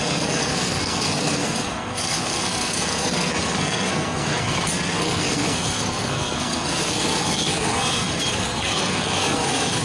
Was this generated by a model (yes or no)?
yes